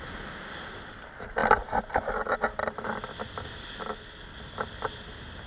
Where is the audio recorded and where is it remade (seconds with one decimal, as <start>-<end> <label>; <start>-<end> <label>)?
0.0-5.5 recorded